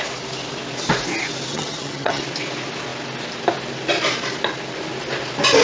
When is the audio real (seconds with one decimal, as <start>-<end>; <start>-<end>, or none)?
0.0-1.5; 2.2-5.6